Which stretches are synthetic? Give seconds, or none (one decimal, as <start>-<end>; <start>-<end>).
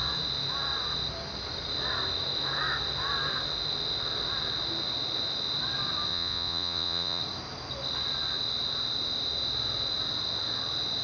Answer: 6.1-7.2